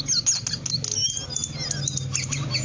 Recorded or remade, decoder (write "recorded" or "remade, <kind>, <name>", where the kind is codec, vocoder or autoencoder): recorded